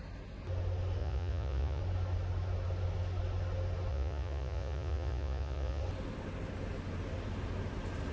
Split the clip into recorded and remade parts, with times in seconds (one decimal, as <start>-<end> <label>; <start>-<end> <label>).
0.0-1.0 recorded; 1.0-1.8 remade; 1.8-3.9 recorded; 3.9-5.8 remade; 5.8-8.1 recorded